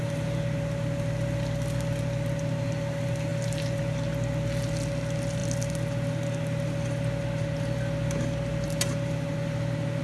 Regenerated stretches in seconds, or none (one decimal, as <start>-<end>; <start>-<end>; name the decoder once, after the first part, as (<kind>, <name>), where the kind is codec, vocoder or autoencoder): none